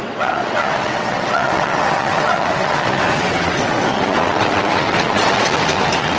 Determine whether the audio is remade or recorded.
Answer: remade